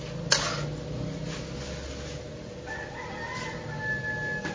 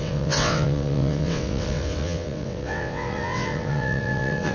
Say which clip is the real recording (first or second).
first